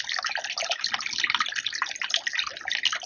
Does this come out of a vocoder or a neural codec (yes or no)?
no